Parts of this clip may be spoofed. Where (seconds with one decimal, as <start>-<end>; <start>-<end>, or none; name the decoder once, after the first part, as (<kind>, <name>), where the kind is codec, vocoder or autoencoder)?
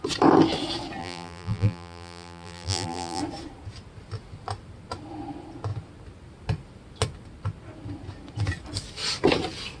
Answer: 1.0-3.2 (vocoder, BigVGAN v2)